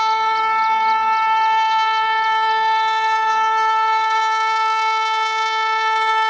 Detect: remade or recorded recorded